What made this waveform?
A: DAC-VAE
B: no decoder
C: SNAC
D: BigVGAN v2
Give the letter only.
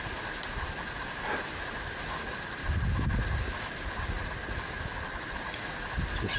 B